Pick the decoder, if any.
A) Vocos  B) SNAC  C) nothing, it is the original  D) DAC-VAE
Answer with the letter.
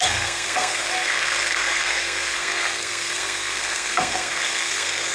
B